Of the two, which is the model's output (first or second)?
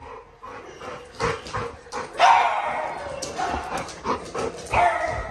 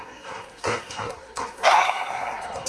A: second